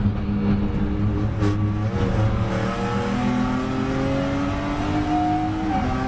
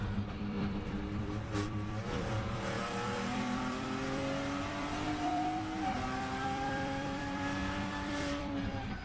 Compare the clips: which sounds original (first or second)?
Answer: first